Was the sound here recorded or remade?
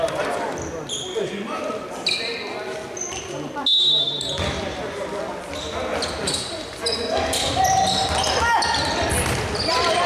recorded